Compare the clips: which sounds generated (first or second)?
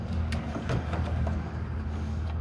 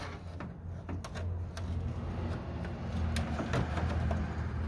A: first